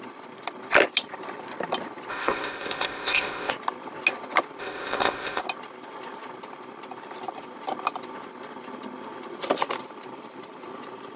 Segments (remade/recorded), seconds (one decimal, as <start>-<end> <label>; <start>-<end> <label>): 0.0-2.1 recorded; 2.1-3.5 remade; 3.5-4.6 recorded; 4.6-5.4 remade; 5.4-11.2 recorded